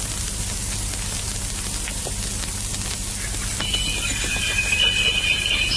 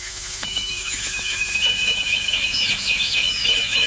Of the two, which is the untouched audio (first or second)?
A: first